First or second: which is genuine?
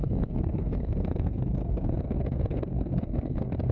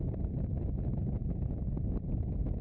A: second